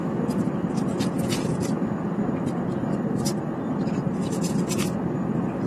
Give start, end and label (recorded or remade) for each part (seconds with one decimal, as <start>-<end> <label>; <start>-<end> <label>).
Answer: 0.0-5.7 recorded